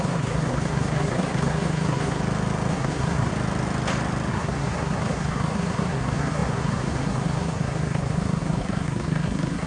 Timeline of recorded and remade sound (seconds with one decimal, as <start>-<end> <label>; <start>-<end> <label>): 0.0-2.2 remade; 2.2-2.7 recorded; 2.7-3.3 remade; 3.3-4.3 recorded; 4.3-9.7 remade